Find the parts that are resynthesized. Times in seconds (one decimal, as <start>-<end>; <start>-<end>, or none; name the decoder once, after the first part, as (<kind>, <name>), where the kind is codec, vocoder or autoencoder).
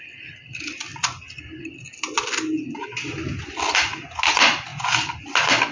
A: none